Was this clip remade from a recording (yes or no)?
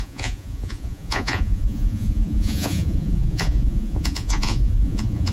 yes